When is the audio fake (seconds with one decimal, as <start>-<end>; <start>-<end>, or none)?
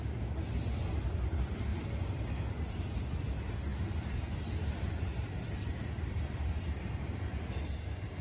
none